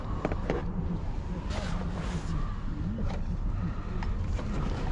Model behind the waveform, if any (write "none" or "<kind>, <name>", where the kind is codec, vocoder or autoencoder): none